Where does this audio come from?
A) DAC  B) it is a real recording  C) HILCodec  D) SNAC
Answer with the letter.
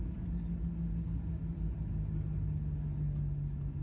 B